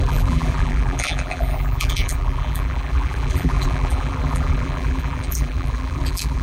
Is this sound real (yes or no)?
no